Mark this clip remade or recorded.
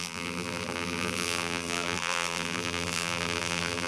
remade